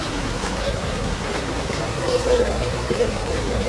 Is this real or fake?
fake